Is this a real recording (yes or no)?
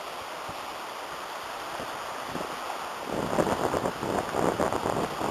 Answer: yes